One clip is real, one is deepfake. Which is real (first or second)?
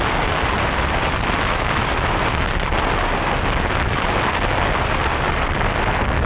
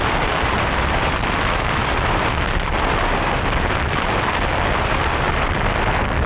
first